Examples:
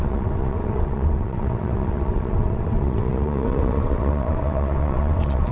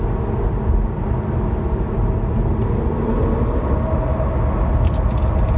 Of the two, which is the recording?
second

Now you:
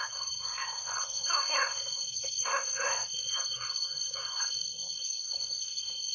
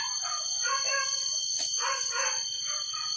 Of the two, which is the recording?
second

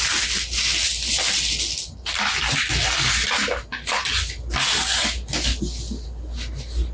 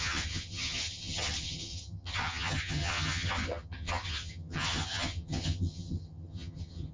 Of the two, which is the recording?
first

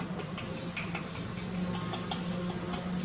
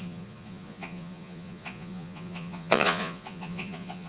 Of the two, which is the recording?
first